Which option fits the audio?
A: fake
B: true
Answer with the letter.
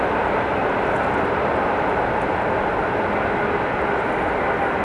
B